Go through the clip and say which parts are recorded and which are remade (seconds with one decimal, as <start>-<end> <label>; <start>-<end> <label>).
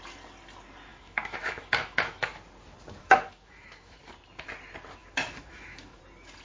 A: 0.0-0.9 recorded; 0.9-2.2 remade; 2.2-3.0 recorded; 3.0-4.0 remade; 4.0-5.0 recorded; 5.0-6.0 remade; 6.0-6.4 recorded